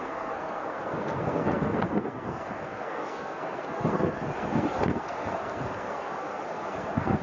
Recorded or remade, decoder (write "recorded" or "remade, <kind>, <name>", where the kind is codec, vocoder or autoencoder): remade, codec, SNAC